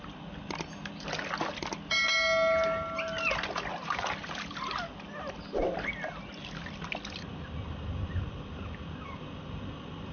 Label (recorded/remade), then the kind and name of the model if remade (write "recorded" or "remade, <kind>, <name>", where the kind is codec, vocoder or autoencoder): recorded